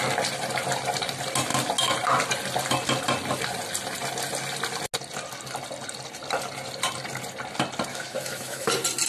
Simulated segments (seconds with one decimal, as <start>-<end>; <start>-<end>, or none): 7.9-8.7